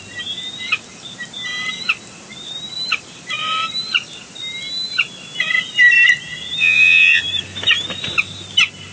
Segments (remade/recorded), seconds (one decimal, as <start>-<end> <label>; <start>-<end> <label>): 0.0-6.6 recorded; 6.6-7.2 remade; 7.2-8.9 recorded